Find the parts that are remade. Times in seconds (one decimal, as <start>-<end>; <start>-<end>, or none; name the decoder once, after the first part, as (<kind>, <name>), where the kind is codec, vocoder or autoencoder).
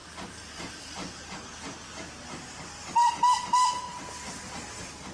none